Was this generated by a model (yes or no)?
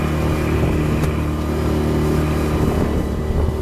no